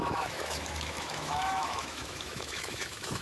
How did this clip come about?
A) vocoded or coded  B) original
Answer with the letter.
A